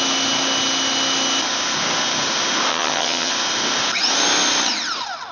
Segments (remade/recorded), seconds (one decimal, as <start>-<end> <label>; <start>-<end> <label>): 0.0-2.7 recorded; 2.7-3.3 remade; 3.3-5.3 recorded